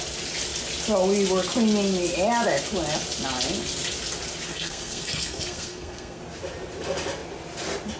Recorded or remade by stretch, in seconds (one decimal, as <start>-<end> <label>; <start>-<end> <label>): 0.0-4.5 recorded; 4.5-6.2 remade; 6.2-8.0 recorded